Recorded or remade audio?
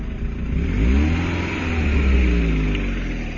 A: recorded